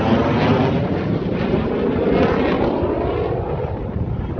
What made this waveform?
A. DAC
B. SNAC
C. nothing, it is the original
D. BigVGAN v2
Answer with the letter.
C